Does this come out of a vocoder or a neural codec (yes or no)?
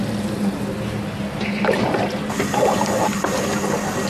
no